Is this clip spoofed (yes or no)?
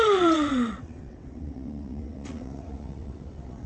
yes